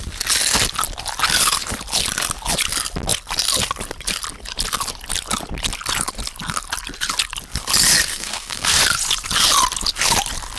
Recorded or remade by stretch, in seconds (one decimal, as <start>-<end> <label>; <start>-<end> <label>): 0.0-8.1 recorded; 8.1-8.8 remade; 8.8-10.6 recorded